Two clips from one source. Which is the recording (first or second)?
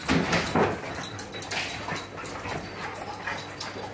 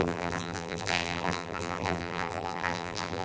first